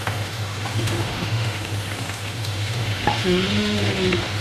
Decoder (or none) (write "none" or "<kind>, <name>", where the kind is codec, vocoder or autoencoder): autoencoder, DAC-VAE